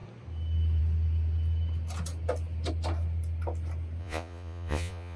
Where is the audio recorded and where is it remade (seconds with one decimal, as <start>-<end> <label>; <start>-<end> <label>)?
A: 0.0-4.0 recorded; 4.0-5.2 remade